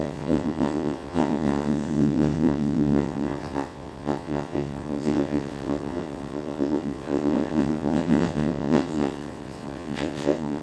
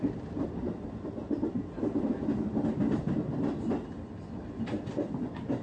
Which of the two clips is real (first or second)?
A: second